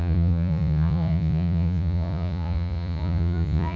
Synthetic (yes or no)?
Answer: yes